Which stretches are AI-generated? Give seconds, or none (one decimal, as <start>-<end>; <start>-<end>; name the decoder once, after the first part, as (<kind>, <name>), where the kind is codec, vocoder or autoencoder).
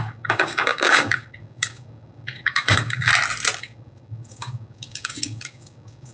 0.0-3.1 (codec, DAC); 3.6-6.1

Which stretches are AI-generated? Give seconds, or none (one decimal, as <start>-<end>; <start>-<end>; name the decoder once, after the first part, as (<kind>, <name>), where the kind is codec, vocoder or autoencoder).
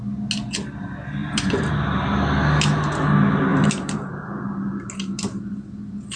1.2-1.7 (vocoder, BigVGAN v2); 3.5-4.4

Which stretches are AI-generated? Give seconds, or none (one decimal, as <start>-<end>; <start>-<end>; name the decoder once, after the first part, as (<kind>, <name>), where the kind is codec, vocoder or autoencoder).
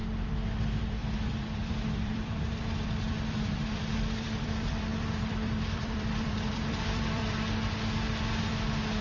0.8-7.2 (vocoder, BigVGAN v2)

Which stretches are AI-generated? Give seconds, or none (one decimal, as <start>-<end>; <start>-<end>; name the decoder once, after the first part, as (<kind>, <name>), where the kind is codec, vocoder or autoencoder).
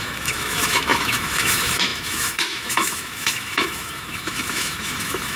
0.0-5.4 (autoencoder, DAC-VAE)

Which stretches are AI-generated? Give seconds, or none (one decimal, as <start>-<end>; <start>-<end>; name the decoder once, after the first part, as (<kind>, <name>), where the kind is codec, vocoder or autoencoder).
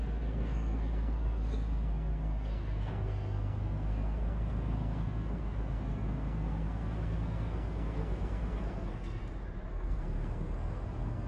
0.0-9.2 (codec, SNAC); 9.7-11.3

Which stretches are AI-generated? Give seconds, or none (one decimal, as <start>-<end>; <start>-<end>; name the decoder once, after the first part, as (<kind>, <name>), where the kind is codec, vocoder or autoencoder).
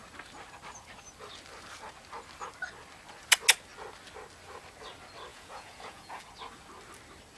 5.3-6.2 (vocoder, Vocos)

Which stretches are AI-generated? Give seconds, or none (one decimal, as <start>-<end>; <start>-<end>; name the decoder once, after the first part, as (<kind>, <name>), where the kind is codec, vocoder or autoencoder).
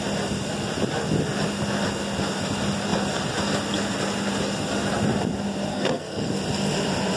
5.7-6.3 (codec, SNAC)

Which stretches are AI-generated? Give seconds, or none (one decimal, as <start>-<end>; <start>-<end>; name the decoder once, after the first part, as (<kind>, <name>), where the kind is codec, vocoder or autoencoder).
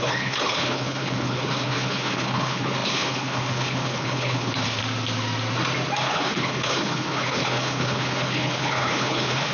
0.0-4.8 (codec, HILCodec); 6.0-9.5